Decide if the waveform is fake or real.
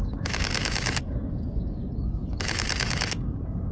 fake